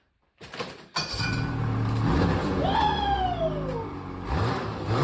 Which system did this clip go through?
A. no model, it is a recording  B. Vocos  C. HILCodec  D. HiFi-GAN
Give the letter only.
A